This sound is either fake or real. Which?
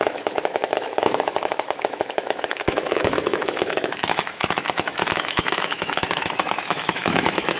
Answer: fake